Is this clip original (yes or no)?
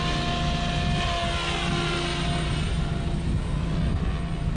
yes